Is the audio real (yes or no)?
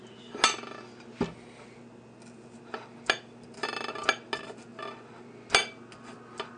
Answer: yes